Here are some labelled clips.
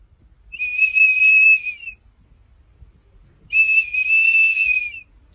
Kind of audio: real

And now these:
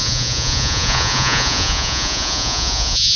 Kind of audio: fake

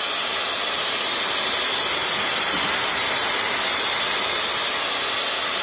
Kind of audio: real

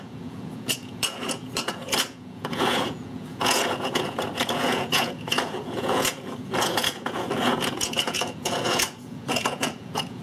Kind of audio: fake